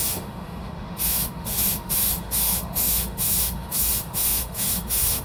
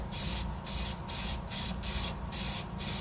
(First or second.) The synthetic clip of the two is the first